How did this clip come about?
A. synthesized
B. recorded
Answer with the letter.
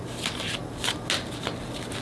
B